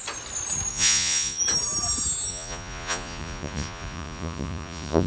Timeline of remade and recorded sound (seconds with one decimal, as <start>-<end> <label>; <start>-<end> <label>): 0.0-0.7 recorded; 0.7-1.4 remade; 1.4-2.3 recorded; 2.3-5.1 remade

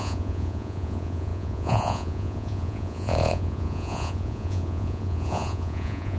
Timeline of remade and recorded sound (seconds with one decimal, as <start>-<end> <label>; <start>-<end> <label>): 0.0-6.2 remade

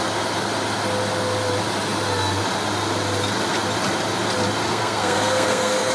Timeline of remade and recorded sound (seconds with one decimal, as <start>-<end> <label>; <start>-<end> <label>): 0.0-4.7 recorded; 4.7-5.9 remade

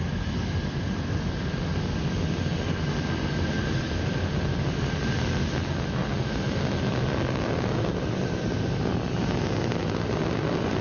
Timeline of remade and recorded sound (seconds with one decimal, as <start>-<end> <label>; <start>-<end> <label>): 0.0-10.8 recorded

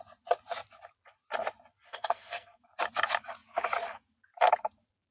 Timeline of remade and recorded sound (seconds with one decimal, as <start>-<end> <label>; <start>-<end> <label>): 0.0-1.9 recorded; 1.9-2.6 remade; 2.6-5.1 recorded

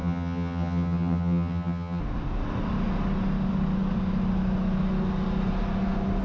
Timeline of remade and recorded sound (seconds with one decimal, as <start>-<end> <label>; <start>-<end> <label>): 0.0-2.0 remade; 2.0-6.2 recorded